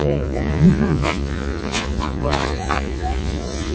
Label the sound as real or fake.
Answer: fake